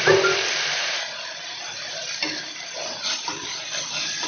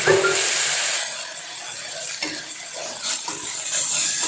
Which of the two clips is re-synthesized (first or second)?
first